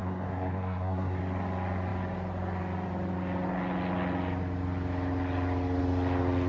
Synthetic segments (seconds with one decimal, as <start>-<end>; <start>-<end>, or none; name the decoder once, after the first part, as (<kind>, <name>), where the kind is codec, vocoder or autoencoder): 0.0-1.2 (codec, SNAC)